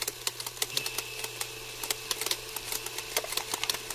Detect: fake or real real